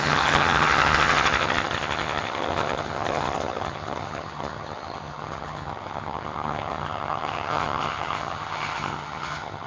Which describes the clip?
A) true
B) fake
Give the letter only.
B